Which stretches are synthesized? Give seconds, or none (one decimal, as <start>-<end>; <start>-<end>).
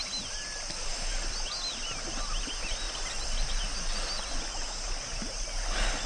none